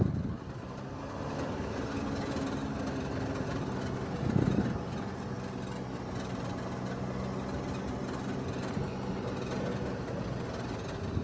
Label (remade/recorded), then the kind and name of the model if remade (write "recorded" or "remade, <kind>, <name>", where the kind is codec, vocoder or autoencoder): recorded